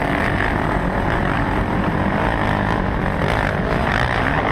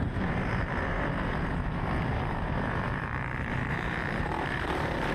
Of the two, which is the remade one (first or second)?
second